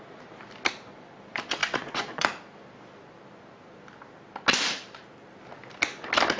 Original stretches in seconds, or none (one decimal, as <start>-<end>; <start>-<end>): 0.0-1.6; 2.3-6.4

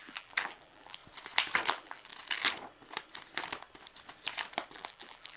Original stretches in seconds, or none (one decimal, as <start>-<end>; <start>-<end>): 1.0-1.7; 2.1-4.7

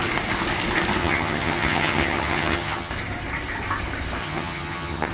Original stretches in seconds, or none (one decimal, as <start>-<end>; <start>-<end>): 0.0-1.0; 2.9-4.2

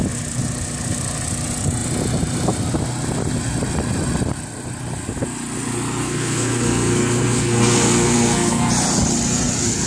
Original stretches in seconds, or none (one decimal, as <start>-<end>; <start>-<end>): 0.0-6.0; 8.7-9.9

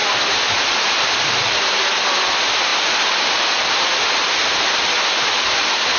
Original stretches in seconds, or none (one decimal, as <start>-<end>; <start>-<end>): 0.0-6.0

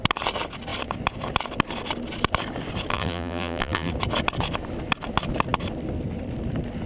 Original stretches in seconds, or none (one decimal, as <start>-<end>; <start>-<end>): 0.0-2.9; 3.9-6.9

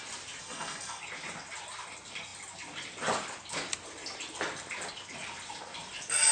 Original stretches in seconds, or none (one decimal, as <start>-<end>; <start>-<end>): 0.0-0.4; 1.0-6.3

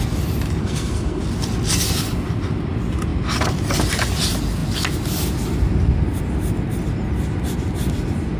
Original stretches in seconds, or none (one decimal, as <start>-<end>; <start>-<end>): 0.0-0.6; 1.2-8.4